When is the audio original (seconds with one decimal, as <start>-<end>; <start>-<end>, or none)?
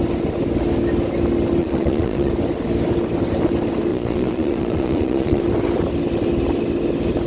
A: 0.0-1.6; 2.3-3.9; 5.4-7.3